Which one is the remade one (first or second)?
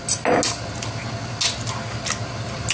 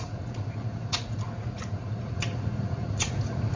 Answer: second